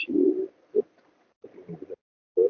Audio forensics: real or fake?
real